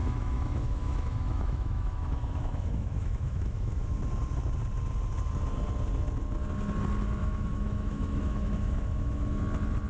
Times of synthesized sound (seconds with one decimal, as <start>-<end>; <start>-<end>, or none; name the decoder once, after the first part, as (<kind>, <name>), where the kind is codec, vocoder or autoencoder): 0.0-3.9 (autoencoder, DAC-VAE); 7.2-9.4